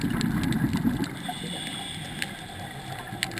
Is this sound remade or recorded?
recorded